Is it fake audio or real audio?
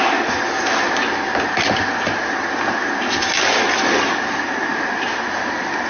real